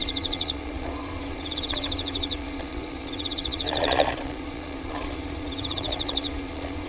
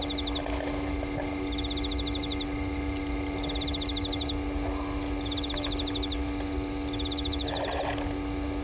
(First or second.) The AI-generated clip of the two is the first